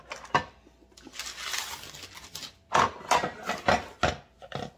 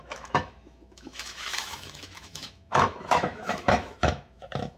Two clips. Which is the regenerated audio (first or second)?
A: second